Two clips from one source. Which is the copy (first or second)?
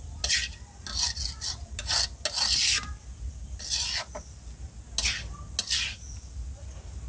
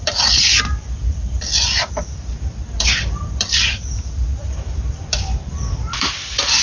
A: second